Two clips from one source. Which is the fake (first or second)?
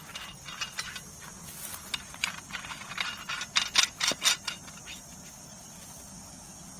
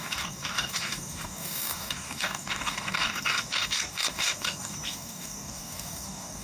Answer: second